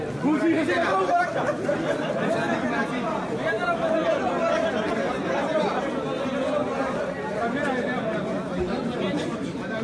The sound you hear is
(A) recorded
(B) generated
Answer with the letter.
A